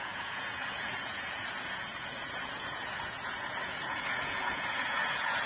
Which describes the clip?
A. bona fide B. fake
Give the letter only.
B